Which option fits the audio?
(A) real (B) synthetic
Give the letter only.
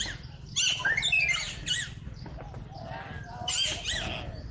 A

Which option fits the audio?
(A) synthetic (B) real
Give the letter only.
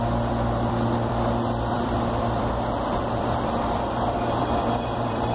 A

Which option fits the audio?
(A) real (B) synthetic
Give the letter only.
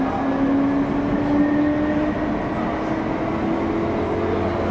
A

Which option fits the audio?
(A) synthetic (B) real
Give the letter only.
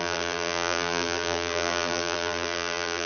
A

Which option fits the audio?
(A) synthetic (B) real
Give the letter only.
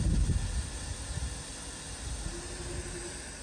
B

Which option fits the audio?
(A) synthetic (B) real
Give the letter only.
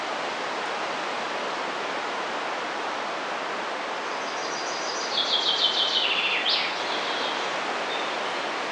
B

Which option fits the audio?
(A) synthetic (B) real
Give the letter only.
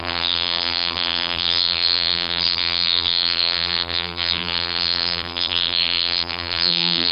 A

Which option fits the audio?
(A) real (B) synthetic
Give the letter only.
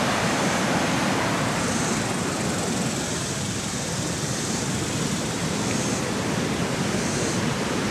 B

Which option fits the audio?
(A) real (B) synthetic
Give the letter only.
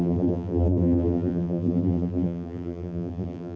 B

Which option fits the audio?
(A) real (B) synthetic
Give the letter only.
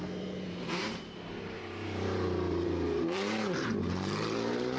B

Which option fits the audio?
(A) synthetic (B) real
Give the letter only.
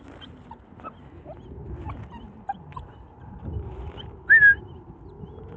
B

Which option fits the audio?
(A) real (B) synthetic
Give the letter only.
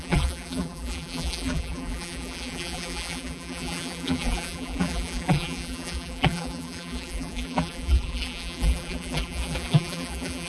B